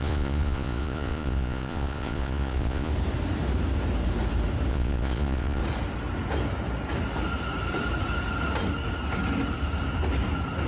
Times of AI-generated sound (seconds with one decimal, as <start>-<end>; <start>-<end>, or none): 0.0-2.9; 4.7-5.6